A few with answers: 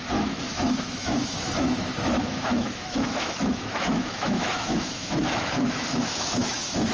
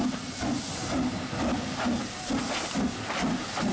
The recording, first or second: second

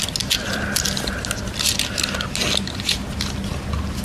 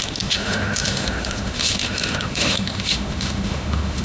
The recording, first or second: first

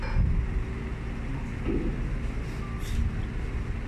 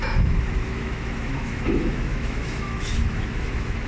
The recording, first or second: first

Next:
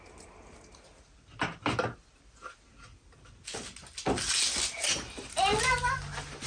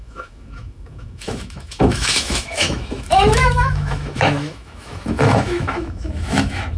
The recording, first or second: first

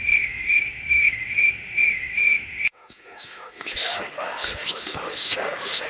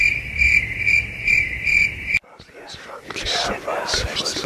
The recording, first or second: second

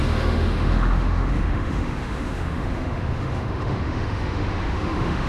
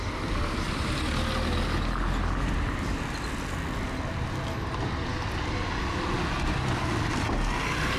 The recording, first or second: second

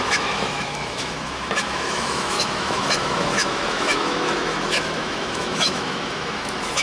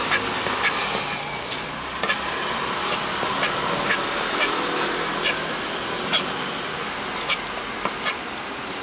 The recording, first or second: second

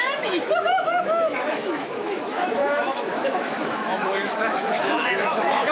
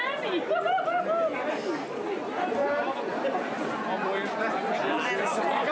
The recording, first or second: second